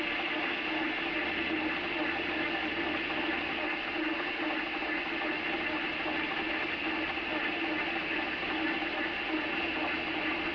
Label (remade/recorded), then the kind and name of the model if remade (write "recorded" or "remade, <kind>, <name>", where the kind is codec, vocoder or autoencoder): recorded